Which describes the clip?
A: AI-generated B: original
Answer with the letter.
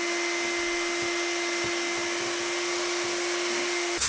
B